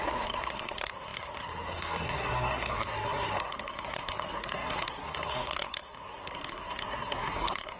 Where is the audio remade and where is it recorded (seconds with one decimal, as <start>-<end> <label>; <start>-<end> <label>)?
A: 0.0-7.8 remade